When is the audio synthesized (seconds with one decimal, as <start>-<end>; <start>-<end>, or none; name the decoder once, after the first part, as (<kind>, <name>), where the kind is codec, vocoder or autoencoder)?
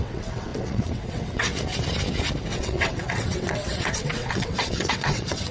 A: 0.0-1.5 (vocoder, WaveNeXt); 2.5-5.5